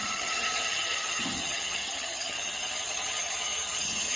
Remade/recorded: remade